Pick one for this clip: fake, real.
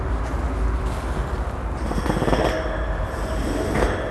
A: real